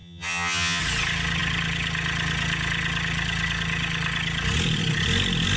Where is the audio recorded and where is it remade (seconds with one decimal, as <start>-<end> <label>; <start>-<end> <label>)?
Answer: 0.0-0.8 remade; 0.8-5.6 recorded

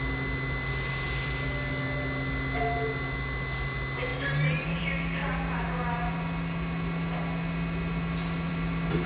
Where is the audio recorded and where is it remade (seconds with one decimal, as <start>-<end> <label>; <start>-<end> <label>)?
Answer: 0.0-9.1 recorded

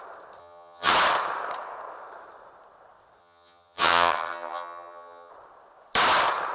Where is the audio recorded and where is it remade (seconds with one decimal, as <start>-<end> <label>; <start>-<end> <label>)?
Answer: 0.0-0.4 recorded; 0.4-0.9 remade; 0.9-3.2 recorded; 3.2-5.3 remade; 5.3-6.5 recorded

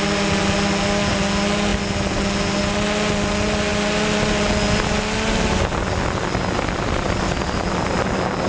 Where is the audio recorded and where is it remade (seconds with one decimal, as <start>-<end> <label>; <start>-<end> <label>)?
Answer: 0.0-8.5 recorded

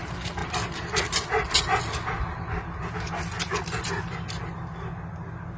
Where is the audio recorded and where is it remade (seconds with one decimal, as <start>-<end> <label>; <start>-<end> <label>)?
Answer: 0.0-5.6 recorded